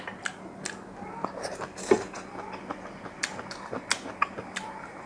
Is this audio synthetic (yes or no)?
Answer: no